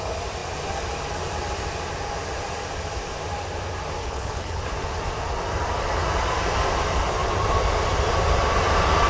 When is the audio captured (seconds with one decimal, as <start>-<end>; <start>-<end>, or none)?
0.0-4.0; 4.6-9.1